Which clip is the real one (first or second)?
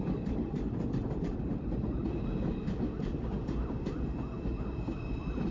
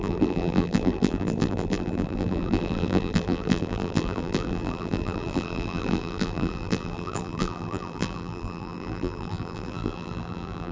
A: first